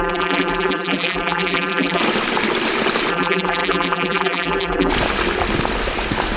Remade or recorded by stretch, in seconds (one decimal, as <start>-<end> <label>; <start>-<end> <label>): 0.0-2.0 remade; 2.0-3.1 recorded; 3.1-4.9 remade; 4.9-6.4 recorded